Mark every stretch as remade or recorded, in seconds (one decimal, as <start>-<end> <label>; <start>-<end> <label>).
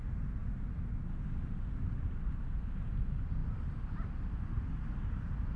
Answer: 0.0-5.6 recorded